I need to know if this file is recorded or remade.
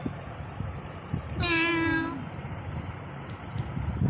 recorded